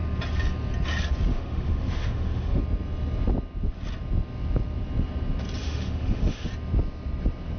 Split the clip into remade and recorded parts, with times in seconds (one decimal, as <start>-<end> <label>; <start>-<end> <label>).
0.0-1.3 recorded; 1.3-2.6 remade; 2.6-5.6 recorded; 5.6-6.5 remade; 6.5-7.6 recorded